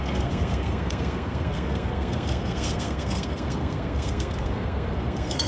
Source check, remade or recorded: remade